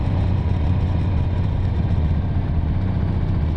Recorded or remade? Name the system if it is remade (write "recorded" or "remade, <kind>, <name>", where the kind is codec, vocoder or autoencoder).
remade, vocoder, Vocos